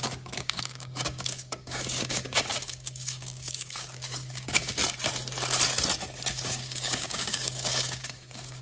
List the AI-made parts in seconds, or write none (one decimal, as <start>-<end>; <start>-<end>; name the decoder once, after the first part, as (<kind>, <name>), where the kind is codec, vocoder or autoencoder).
0.0-4.8 (codec, DAC); 6.3-8.6